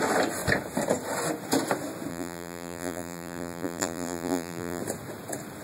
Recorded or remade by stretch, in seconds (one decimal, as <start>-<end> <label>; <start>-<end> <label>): 0.0-2.1 recorded; 2.1-4.8 remade; 4.8-5.6 recorded

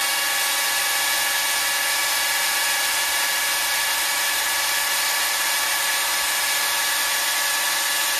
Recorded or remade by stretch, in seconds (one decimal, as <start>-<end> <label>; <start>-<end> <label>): 0.0-2.0 recorded; 2.0-6.9 remade; 6.9-8.2 recorded